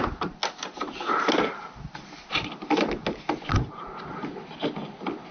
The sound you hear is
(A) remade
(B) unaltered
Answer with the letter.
B